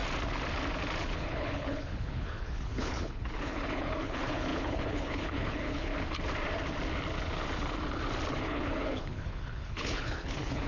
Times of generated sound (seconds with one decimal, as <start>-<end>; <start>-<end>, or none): 1.0-5.9; 8.3-10.7

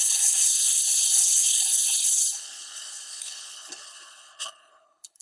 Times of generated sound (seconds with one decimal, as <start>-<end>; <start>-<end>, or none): 0.0-5.2

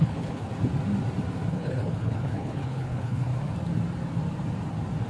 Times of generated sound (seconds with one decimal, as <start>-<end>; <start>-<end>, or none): 0.0-0.5; 1.5-3.3

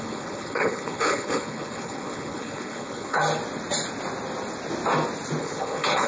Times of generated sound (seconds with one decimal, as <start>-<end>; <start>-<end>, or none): 0.0-3.2; 5.4-6.1